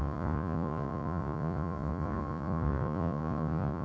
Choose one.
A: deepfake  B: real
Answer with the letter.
A